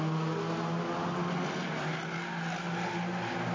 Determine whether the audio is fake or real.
real